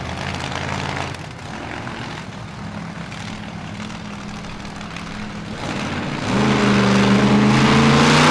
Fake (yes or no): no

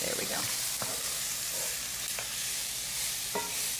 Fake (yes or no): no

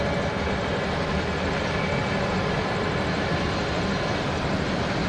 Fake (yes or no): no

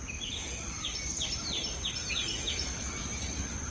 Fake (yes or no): no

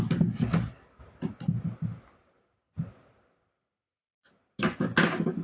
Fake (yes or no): no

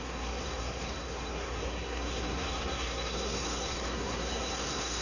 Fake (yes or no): yes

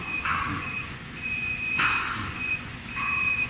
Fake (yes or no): yes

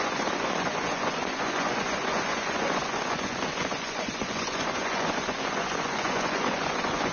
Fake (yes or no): yes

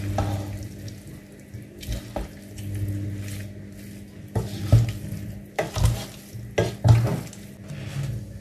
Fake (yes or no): no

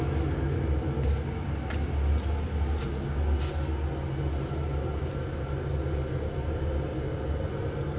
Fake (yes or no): no